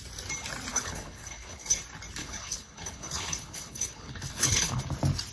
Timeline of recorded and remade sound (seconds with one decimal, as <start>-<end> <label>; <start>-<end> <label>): 0.0-0.7 recorded; 0.7-1.8 remade; 1.8-2.2 recorded; 2.2-4.8 remade; 4.8-5.3 recorded